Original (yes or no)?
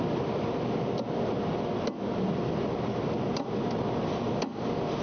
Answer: yes